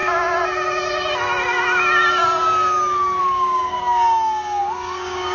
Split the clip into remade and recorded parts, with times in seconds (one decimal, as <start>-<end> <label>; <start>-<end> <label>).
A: 0.0-3.2 recorded; 3.2-5.3 remade

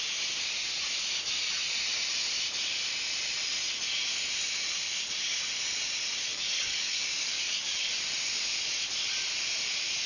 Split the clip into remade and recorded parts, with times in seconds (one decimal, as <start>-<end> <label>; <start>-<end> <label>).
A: 0.0-6.3 recorded; 6.3-7.9 remade; 7.9-10.1 recorded

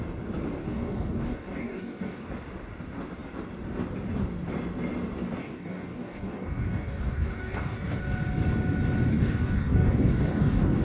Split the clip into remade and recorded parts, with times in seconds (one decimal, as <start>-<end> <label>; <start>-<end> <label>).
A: 0.0-0.6 recorded; 0.6-2.3 remade; 2.3-5.4 recorded; 5.4-8.0 remade; 8.0-9.1 recorded; 9.1-10.8 remade

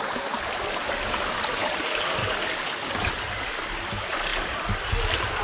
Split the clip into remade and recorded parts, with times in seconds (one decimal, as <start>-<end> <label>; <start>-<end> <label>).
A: 0.0-2.2 recorded; 2.2-2.9 remade; 2.9-5.4 recorded

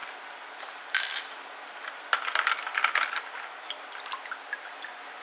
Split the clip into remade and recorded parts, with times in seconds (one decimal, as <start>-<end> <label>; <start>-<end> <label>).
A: 0.0-5.2 recorded

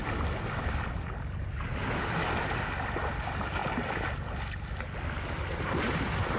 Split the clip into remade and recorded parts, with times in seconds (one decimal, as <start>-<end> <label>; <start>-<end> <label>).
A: 0.0-6.4 recorded

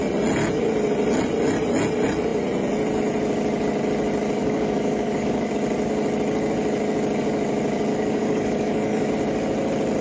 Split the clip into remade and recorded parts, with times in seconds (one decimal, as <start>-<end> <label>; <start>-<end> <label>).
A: 0.0-4.4 recorded; 4.4-5.5 remade; 5.5-7.9 recorded; 7.9-9.1 remade; 9.1-10.0 recorded